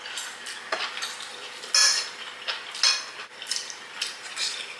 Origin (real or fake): real